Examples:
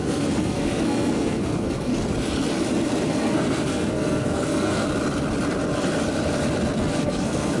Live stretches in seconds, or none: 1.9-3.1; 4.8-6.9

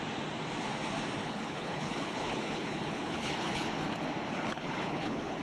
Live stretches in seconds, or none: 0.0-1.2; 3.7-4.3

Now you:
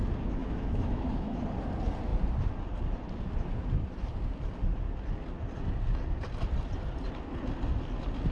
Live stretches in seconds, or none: 0.0-0.4; 1.4-8.3